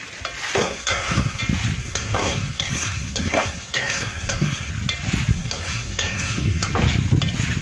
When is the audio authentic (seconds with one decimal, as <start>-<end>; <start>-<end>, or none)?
0.0-0.6; 1.4-1.8; 4.7-5.3; 6.7-7.6